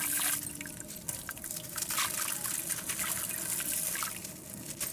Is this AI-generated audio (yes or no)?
no